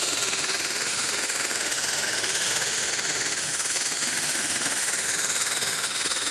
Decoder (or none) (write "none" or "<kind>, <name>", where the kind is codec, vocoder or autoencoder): autoencoder, DAC-VAE